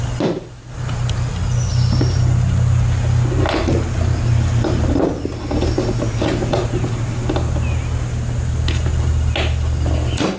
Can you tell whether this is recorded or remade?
recorded